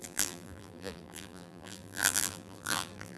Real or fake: fake